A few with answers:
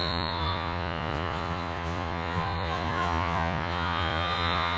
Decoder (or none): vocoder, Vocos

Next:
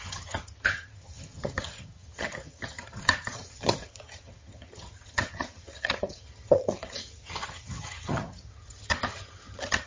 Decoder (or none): vocoder, HiFi-GAN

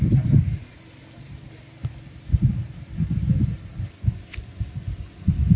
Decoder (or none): none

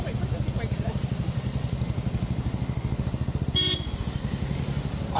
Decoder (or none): none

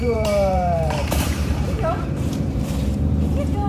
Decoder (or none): vocoder, BigVGAN v2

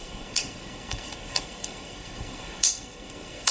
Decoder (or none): codec, SNAC